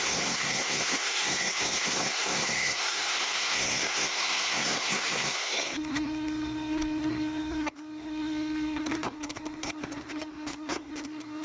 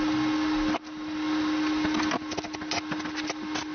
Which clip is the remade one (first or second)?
first